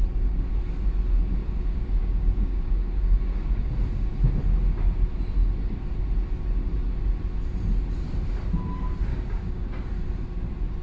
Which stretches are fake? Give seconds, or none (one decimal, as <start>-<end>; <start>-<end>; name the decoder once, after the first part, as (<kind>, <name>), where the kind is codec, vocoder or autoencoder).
2.0-3.7 (codec, DAC); 9.1-9.6